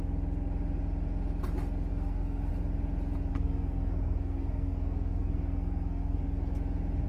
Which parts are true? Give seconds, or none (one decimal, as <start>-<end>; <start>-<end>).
0.0-1.9; 2.5-3.3; 6.6-7.1